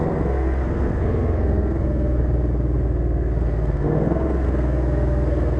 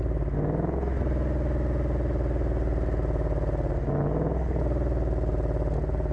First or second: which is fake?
first